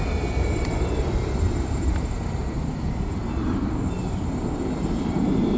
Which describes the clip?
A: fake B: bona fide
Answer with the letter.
A